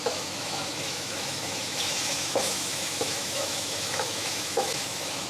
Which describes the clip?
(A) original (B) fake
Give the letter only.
B